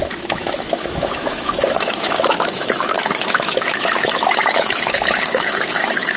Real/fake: fake